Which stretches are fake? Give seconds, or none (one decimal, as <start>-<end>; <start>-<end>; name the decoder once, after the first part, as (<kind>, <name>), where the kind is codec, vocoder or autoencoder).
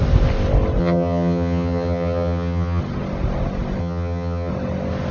0.8-2.8 (vocoder, HiFi-GAN); 3.8-4.5